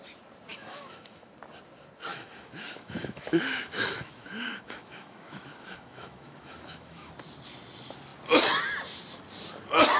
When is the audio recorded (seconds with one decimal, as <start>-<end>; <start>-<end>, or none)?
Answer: 0.0-0.5; 1.3-2.1; 7.1-10.0